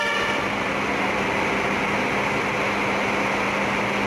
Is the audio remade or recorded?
recorded